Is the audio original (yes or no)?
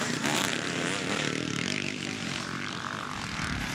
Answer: no